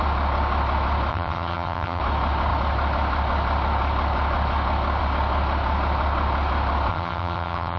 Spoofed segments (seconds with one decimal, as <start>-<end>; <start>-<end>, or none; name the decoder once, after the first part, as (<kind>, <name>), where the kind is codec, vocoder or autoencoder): 1.1-2.0 (vocoder, HiFi-GAN); 6.9-7.8